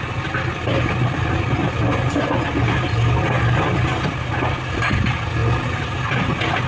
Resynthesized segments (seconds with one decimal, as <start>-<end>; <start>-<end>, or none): none